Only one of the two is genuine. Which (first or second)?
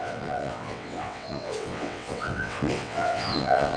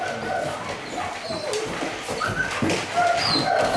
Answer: second